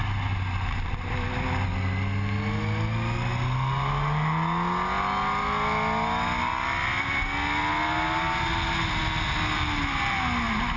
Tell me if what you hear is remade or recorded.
recorded